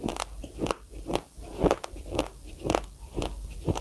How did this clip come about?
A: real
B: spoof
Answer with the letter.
A